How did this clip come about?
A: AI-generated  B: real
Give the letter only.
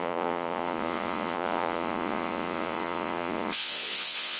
A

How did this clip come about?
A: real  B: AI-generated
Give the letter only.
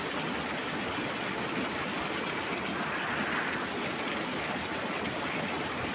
A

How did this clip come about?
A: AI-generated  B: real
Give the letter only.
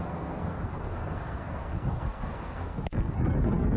A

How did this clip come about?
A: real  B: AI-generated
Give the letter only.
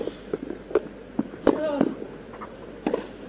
A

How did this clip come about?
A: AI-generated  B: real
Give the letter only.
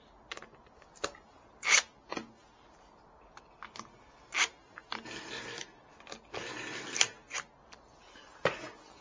B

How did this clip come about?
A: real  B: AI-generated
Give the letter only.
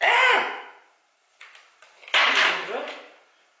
A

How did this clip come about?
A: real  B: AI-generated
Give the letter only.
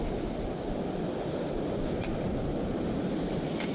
A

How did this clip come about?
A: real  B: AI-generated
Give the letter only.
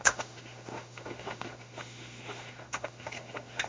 B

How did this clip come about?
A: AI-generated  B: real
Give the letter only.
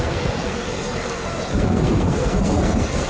A